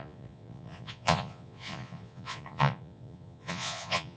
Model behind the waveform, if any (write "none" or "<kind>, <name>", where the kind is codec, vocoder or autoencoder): vocoder, Vocos